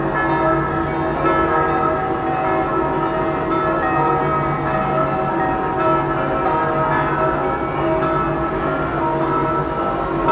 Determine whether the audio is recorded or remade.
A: recorded